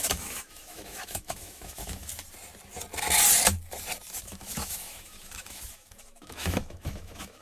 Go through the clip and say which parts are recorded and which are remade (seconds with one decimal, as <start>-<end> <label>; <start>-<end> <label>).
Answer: 0.0-2.1 remade; 2.1-4.2 recorded; 4.2-7.4 remade